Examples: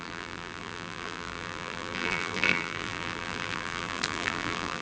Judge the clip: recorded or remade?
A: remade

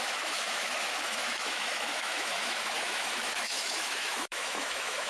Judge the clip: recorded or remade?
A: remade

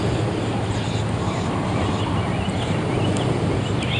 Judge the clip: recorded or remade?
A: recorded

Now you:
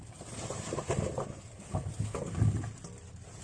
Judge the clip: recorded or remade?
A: recorded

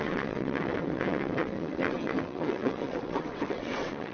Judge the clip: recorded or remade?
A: remade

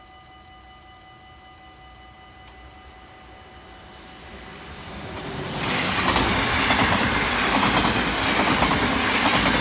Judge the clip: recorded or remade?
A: recorded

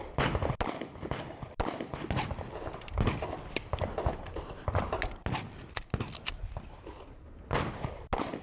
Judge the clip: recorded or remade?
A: recorded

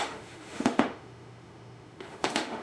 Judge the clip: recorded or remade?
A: remade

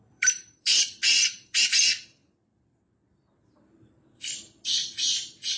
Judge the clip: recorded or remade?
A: remade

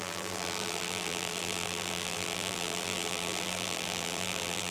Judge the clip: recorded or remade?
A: remade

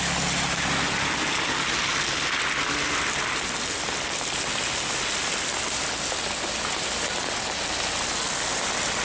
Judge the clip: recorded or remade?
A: recorded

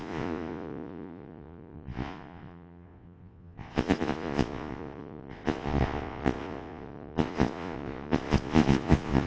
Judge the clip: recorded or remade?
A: remade